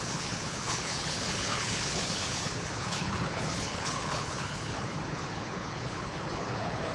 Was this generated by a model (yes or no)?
yes